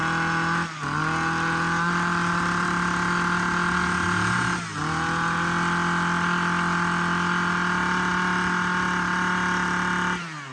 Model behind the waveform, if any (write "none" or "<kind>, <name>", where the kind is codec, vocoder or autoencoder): none